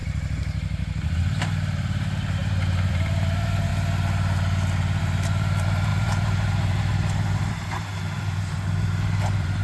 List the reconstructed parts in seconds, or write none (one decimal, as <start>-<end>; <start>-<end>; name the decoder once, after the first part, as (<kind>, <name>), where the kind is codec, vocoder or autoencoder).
1.2-3.7 (vocoder, BigVGAN v2); 5.0-9.6